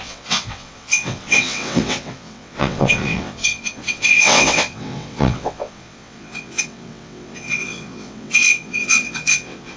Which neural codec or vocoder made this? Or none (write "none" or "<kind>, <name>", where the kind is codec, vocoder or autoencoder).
vocoder, WaveNeXt